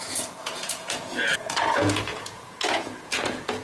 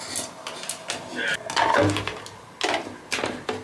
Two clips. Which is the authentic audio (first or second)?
second